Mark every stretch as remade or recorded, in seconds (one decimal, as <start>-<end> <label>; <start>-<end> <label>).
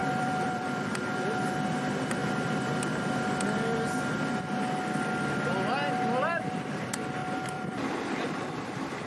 0.0-1.0 remade; 1.0-7.2 recorded; 7.2-7.9 remade; 7.9-9.1 recorded